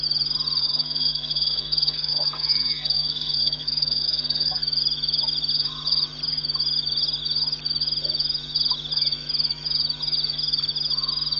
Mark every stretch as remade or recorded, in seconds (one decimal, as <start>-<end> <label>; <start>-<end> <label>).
0.0-0.6 recorded; 0.6-4.6 remade; 4.6-11.4 recorded